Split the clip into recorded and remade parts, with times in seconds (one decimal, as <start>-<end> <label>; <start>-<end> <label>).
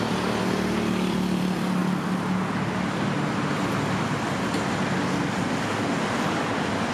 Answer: 0.0-6.9 recorded